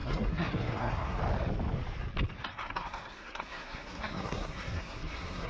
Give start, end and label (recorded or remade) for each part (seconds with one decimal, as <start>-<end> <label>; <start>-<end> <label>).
0.0-1.2 remade; 1.2-2.5 recorded; 2.5-5.5 remade